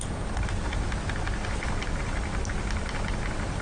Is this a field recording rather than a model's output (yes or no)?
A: yes